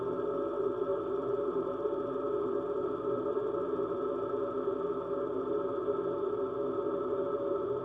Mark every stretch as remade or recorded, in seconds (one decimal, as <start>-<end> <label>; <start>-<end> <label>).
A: 0.0-0.9 recorded; 0.9-4.0 remade; 4.0-7.8 recorded

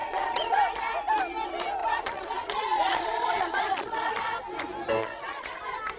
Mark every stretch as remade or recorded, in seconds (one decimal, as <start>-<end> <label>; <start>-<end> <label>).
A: 0.0-0.6 remade; 0.6-1.8 recorded; 1.8-4.1 remade; 4.1-5.0 recorded; 5.0-5.6 remade; 5.6-6.0 recorded

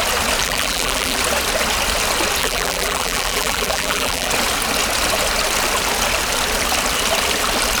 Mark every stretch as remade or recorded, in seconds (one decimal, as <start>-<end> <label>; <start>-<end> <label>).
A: 0.0-0.4 recorded; 0.4-1.2 remade; 1.2-2.4 recorded; 2.4-4.3 remade; 4.3-7.8 recorded

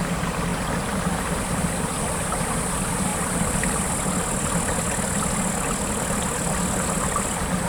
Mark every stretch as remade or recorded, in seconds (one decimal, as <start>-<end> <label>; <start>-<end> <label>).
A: 0.0-7.7 recorded

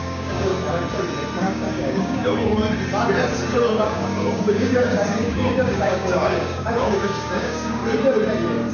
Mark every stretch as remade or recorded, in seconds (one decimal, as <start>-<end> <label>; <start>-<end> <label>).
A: 0.0-0.5 remade; 0.5-1.4 recorded; 1.4-2.6 remade; 2.6-3.5 recorded; 3.5-7.8 remade; 7.8-8.7 recorded

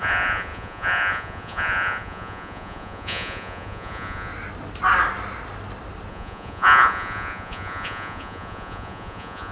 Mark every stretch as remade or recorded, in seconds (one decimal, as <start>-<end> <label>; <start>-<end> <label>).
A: 0.0-4.3 remade; 4.3-6.1 recorded; 6.1-9.5 remade

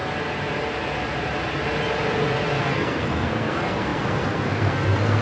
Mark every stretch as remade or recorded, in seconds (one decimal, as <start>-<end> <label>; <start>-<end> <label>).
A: 0.0-2.6 recorded; 2.6-5.2 remade